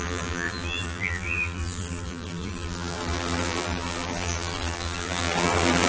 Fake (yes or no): yes